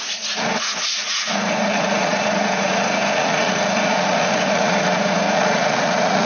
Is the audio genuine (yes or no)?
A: no